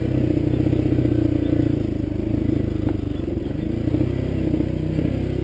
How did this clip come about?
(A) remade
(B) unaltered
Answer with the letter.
B